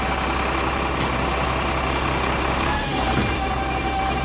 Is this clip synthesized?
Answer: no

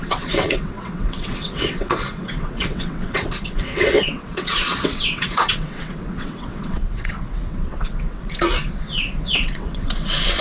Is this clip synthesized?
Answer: yes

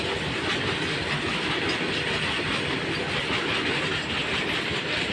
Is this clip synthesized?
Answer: no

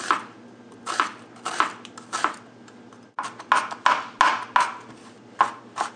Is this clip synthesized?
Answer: no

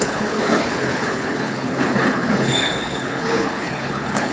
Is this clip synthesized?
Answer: yes